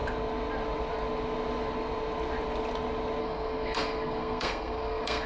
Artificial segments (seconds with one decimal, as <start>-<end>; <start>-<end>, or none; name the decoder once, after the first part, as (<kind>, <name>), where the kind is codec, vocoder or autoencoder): 3.2-5.3 (codec, SNAC)